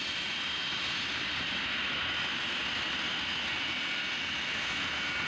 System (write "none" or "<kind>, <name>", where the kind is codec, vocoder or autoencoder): none